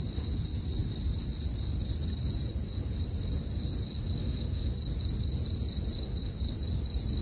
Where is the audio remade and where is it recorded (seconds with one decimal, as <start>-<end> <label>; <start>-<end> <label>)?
0.0-4.2 recorded; 4.2-4.7 remade; 4.7-7.2 recorded